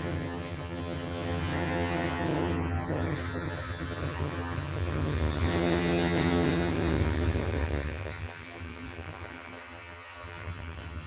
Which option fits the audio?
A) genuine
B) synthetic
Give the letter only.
B